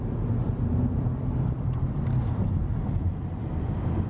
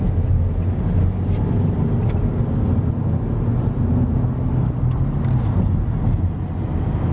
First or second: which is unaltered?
second